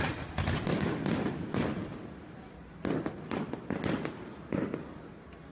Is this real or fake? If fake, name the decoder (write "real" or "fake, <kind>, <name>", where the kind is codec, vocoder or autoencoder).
real